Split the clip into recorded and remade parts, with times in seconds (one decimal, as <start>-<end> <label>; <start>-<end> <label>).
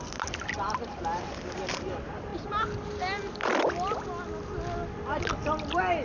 0.0-6.0 recorded